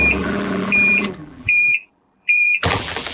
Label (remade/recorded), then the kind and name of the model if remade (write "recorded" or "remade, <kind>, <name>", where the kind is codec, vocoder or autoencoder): remade, vocoder, BigVGAN v2